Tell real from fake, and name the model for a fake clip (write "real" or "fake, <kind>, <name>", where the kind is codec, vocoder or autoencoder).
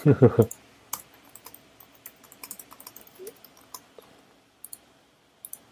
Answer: real